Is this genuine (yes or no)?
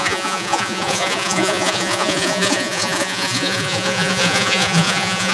no